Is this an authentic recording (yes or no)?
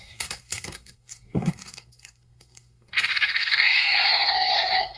no